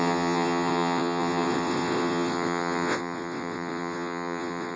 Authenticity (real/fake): fake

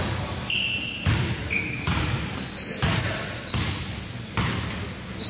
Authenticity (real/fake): real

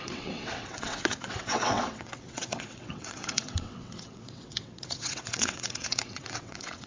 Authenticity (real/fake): fake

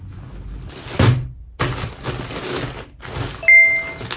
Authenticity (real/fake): real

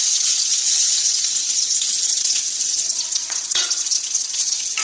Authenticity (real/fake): fake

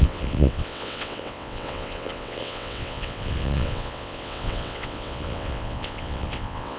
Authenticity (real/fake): fake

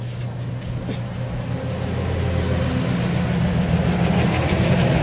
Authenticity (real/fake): real